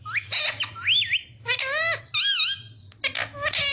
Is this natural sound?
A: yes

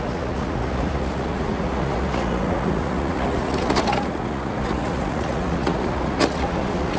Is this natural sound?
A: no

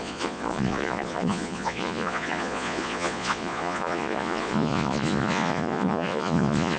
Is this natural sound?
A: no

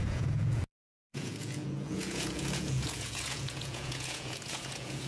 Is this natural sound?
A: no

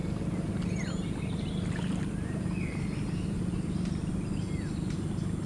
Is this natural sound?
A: yes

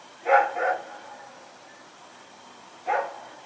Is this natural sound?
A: yes